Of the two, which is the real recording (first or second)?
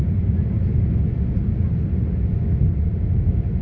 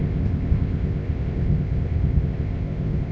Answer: first